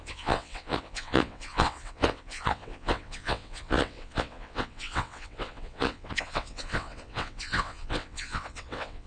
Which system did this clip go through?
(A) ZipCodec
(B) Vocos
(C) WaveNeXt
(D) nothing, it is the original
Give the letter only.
C